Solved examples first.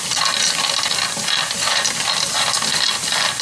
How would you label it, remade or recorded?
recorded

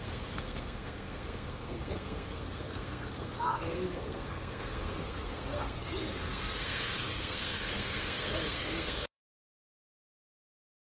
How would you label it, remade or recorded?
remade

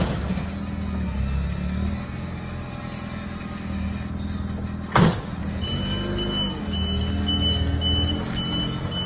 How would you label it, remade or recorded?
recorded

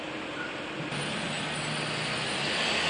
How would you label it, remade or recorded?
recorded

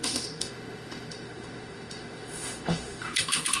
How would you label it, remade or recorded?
remade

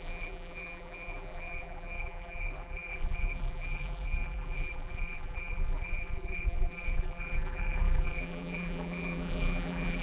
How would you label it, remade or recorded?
remade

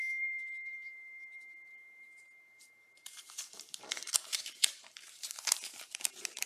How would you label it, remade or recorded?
remade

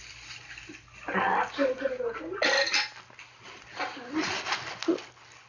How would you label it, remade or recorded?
recorded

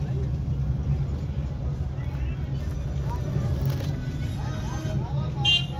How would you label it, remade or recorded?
recorded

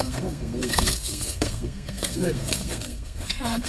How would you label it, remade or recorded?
remade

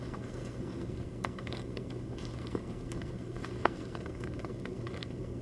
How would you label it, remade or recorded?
remade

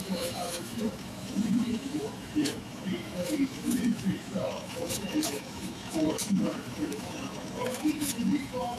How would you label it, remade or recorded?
remade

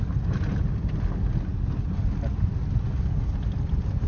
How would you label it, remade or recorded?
recorded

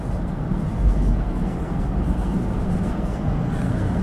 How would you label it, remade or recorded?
remade